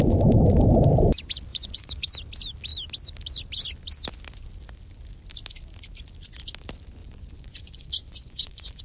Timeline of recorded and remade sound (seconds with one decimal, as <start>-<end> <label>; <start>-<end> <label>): 0.0-1.5 recorded; 1.5-2.1 remade; 2.1-7.0 recorded; 7.0-8.8 remade